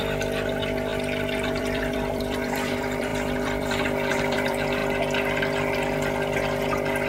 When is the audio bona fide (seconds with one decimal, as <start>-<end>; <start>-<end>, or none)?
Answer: 0.9-1.6; 4.8-7.1